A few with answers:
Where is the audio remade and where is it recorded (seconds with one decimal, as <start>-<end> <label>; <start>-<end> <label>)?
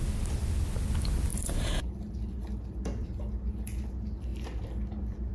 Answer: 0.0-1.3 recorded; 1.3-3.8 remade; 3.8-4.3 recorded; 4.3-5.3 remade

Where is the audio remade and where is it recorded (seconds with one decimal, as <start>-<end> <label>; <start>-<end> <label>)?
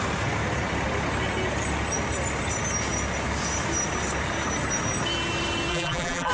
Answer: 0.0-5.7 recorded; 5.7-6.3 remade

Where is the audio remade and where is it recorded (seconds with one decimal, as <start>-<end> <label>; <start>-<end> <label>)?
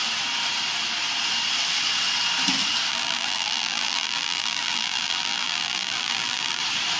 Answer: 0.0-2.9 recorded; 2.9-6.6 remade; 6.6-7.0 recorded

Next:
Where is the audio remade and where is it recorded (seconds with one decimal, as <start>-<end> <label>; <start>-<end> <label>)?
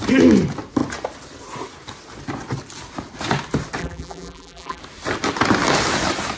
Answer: 0.0-3.8 recorded; 3.8-4.8 remade; 4.8-6.4 recorded